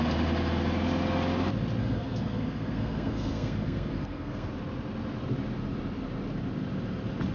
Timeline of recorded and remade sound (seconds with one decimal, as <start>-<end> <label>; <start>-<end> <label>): 0.0-1.8 recorded; 1.8-4.5 remade; 4.5-7.3 recorded